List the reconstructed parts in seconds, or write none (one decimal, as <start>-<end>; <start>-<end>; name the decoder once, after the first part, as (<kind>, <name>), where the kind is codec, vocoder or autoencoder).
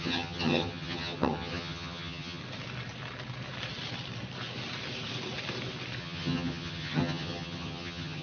0.0-2.4 (vocoder, HiFi-GAN); 6.0-8.2